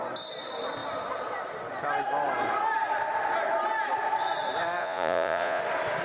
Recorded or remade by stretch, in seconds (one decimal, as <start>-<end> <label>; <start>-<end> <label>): 0.0-4.8 recorded; 4.8-5.6 remade; 5.6-6.0 recorded